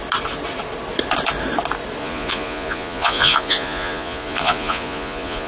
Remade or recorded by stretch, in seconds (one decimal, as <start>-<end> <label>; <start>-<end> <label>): 0.0-2.0 recorded; 2.0-5.5 remade